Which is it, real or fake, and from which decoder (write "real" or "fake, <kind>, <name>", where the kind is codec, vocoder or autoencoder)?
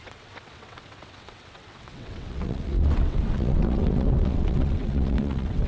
fake, vocoder, WaveNeXt